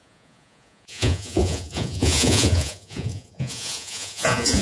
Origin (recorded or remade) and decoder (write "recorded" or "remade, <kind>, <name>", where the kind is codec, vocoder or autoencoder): remade, vocoder, Vocos